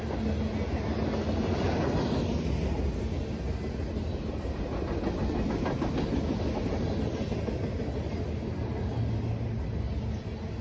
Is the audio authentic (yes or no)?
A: yes